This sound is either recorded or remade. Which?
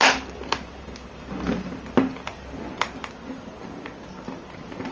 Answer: recorded